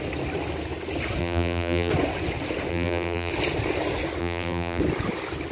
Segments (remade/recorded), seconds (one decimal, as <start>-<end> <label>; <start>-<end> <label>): 0.0-1.2 recorded; 1.2-1.9 remade; 1.9-2.7 recorded; 2.7-3.3 remade; 3.3-4.2 recorded; 4.2-4.8 remade; 4.8-5.5 recorded